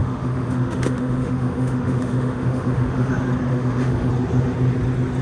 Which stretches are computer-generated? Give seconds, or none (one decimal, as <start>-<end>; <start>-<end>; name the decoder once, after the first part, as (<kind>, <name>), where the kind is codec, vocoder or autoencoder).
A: 0.0-3.1 (autoencoder, DAC-VAE); 3.5-4.1